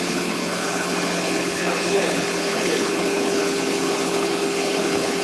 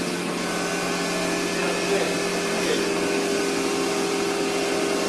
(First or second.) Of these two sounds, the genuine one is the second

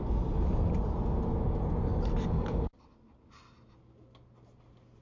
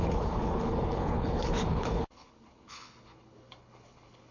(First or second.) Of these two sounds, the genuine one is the first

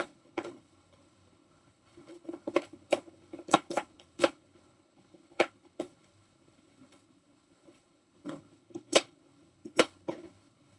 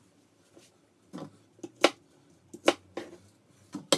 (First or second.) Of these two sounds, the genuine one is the second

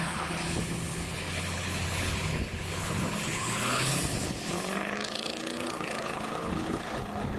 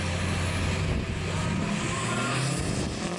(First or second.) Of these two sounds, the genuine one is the second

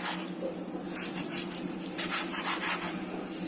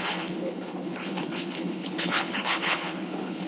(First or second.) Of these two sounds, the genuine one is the first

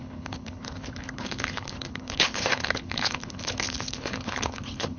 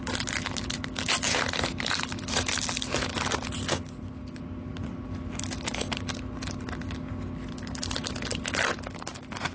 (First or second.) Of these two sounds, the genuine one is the second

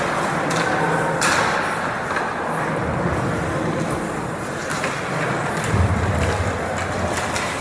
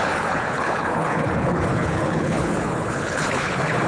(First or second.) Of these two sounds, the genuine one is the first